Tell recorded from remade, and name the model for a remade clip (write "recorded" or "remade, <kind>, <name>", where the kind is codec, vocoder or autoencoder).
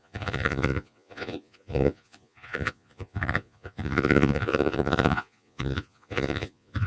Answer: remade, vocoder, Vocos